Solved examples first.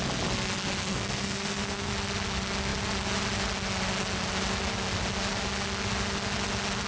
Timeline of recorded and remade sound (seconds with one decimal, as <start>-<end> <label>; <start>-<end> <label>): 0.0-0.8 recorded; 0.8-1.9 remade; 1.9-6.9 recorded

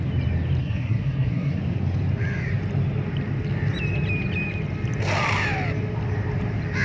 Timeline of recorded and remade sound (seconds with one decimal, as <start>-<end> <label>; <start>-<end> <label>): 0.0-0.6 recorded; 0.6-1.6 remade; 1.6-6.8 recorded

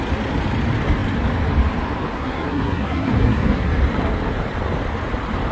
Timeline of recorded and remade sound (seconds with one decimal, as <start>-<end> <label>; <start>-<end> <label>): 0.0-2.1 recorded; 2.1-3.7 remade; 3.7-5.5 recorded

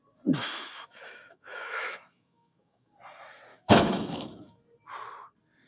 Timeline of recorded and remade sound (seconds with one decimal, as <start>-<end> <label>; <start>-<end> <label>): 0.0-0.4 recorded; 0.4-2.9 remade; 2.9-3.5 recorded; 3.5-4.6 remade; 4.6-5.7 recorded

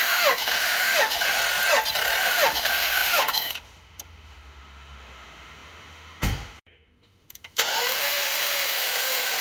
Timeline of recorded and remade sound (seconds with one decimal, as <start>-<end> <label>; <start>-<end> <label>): 0.0-1.4 remade; 1.4-2.2 recorded; 2.2-9.4 remade